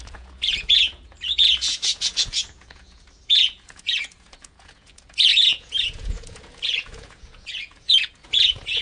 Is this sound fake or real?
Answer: fake